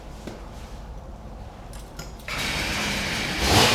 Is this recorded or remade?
remade